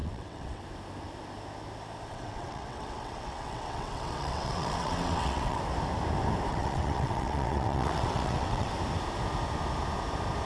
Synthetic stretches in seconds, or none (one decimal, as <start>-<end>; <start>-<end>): 0.0-0.6; 2.1-5.6; 6.5-8.7